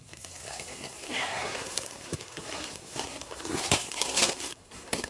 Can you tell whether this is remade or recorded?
remade